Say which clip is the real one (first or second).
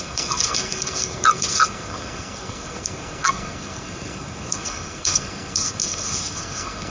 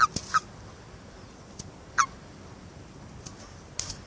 second